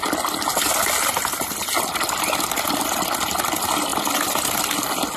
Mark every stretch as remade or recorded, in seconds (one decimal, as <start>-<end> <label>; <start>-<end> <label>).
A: 0.0-5.2 recorded